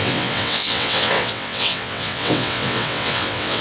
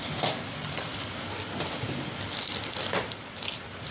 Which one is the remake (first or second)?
first